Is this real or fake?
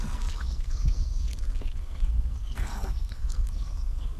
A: fake